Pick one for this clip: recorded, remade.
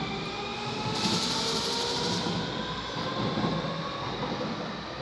recorded